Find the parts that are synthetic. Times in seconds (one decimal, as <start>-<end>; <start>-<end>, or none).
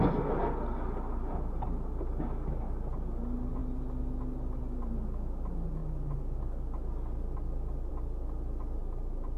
8.8-9.4